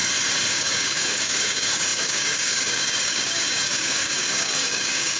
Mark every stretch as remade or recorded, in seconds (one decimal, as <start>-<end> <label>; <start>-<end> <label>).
0.0-0.5 recorded; 0.5-5.2 remade